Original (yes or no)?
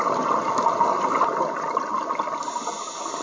yes